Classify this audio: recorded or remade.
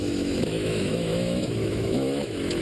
remade